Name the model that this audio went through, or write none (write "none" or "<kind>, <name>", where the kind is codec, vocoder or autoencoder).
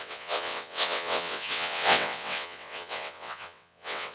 vocoder, WaveNeXt